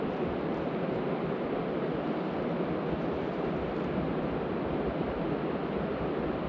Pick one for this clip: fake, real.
real